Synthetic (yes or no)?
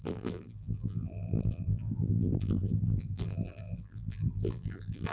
yes